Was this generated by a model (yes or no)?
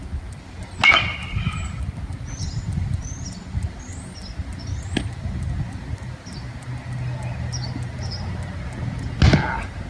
no